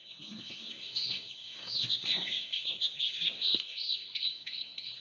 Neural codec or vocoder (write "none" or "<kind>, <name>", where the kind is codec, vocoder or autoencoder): codec, SNAC